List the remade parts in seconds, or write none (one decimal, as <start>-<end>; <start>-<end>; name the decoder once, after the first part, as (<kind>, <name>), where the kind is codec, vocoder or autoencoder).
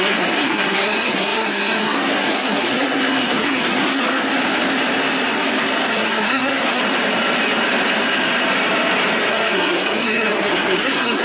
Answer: 0.0-4.4 (codec, SNAC); 5.9-6.8; 9.3-11.2